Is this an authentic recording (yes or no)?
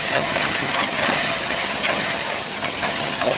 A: no